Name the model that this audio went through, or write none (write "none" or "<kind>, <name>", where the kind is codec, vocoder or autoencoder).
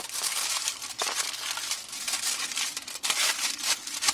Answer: none